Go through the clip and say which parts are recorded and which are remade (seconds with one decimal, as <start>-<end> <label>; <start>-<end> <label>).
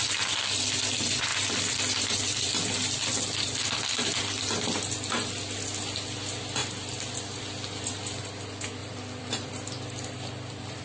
0.0-1.3 recorded; 1.3-5.3 remade; 5.3-8.8 recorded; 8.8-10.8 remade